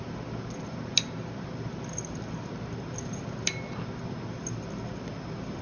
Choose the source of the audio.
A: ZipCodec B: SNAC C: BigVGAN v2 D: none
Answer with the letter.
D